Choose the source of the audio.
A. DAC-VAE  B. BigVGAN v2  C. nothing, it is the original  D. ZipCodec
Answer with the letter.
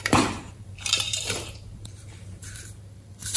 B